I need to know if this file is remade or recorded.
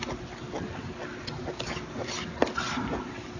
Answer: recorded